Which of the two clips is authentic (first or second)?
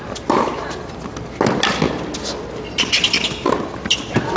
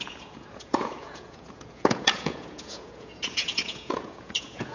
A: first